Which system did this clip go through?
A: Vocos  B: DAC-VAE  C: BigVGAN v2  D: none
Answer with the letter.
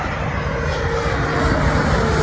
D